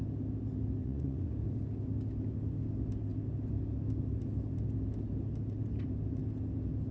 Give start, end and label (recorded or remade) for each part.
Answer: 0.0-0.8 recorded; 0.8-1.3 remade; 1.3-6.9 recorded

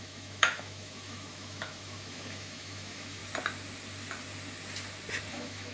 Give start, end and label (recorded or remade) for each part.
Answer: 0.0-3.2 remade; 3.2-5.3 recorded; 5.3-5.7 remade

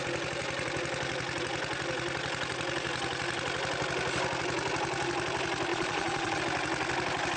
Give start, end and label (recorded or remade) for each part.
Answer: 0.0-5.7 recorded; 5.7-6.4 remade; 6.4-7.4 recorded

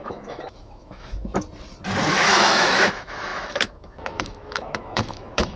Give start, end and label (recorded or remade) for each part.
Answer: 0.0-1.3 remade; 1.3-2.1 recorded; 2.1-5.6 remade

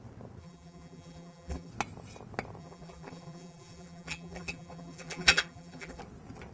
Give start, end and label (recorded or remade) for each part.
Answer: 0.0-0.4 recorded; 0.4-1.7 remade; 1.7-2.6 recorded; 2.6-6.0 remade; 6.0-6.5 recorded

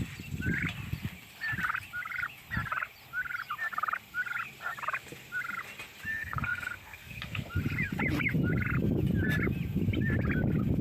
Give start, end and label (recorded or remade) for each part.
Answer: 0.0-6.1 recorded; 6.1-7.5 remade; 7.5-10.8 recorded

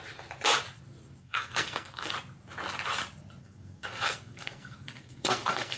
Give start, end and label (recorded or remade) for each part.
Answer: 0.0-1.2 recorded; 1.2-2.1 remade; 2.1-3.4 recorded; 3.4-5.8 remade

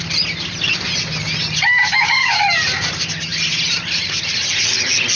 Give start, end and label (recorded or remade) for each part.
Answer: 0.0-1.8 recorded; 1.8-2.4 remade; 2.4-5.2 recorded